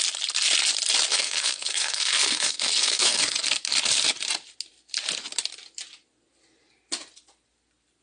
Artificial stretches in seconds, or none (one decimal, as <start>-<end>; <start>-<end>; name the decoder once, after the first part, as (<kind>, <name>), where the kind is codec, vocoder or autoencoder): 1.1-3.2 (codec, SNAC)